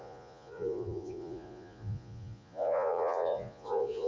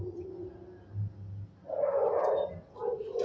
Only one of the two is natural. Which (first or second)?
second